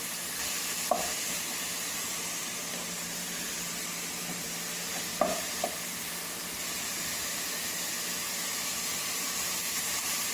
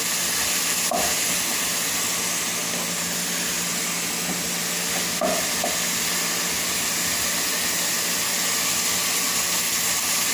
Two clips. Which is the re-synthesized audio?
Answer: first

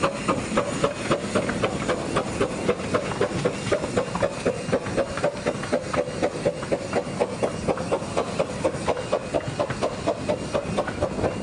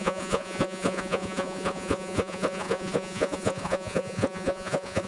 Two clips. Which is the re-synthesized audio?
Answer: second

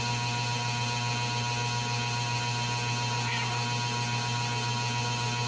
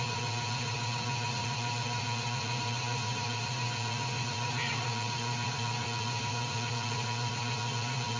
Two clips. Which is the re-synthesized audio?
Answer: second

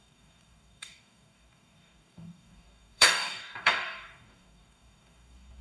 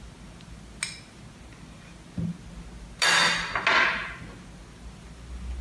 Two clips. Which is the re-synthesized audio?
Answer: first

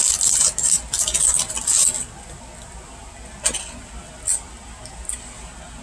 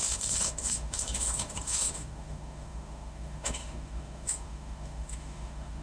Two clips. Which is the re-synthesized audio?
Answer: second